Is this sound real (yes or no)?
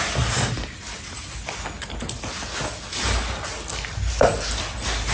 yes